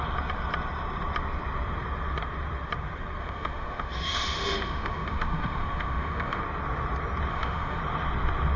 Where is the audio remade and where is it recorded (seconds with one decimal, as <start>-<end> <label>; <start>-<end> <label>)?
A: 0.0-3.2 recorded; 3.2-6.4 remade; 6.4-7.3 recorded; 7.3-7.8 remade; 7.8-8.6 recorded